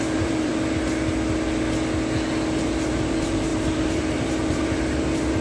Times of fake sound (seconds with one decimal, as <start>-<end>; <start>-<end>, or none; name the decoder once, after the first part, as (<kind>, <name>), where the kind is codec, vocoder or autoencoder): 0.0-0.5 (vocoder, BigVGAN v2); 2.6-5.4